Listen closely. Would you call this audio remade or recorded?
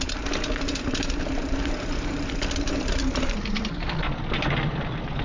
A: remade